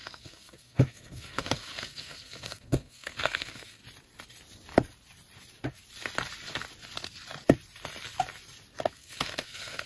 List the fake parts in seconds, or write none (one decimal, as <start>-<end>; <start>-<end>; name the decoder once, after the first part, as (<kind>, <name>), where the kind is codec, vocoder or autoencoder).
0.0-3.8 (codec, SNAC); 8.9-9.9